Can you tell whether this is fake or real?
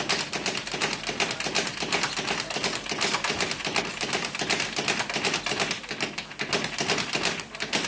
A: real